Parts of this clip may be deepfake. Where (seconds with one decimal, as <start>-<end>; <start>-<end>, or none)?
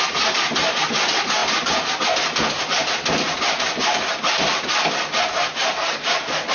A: none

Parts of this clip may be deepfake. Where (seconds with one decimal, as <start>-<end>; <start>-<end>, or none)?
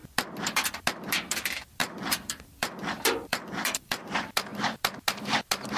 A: 1.8-4.0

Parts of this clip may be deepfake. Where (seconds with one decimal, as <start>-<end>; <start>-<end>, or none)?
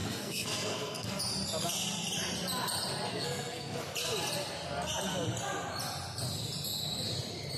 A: 0.0-1.2; 3.1-3.8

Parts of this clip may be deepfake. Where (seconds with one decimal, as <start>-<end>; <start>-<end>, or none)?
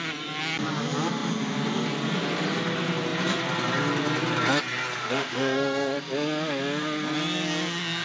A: 5.0-6.0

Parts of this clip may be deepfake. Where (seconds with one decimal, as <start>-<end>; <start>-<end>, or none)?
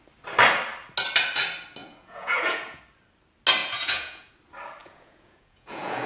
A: 1.8-2.8; 3.6-4.3; 4.8-6.1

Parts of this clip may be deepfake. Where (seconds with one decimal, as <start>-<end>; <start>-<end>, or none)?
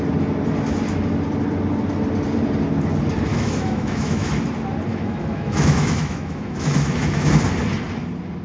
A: 3.3-4.3; 4.9-7.3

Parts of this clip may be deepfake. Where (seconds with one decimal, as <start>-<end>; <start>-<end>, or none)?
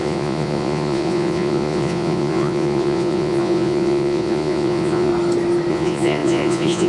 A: 0.0-5.1; 5.7-6.9